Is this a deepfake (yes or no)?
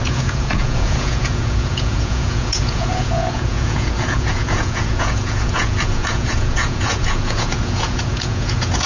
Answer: yes